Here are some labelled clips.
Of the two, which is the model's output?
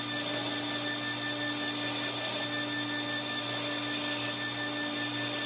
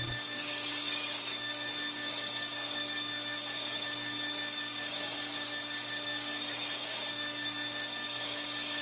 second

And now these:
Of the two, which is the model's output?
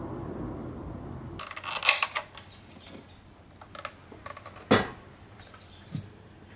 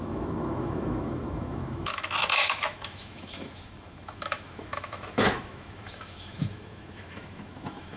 second